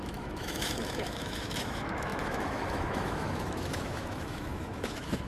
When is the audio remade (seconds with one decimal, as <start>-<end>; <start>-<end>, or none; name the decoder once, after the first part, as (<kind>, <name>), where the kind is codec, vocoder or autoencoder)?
0.0-5.3 (autoencoder, DAC-VAE)